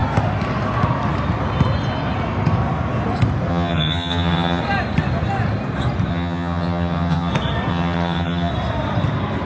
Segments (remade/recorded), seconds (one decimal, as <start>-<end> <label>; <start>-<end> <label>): 0.0-3.5 recorded; 3.5-4.6 remade; 4.6-6.1 recorded; 6.1-7.3 remade; 7.3-7.7 recorded; 7.7-8.5 remade; 8.5-9.4 recorded